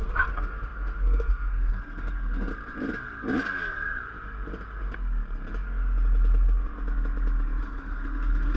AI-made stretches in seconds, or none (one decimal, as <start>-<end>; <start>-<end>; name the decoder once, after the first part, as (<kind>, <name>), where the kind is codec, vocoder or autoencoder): 0.0-2.5 (codec, SNAC); 7.6-8.6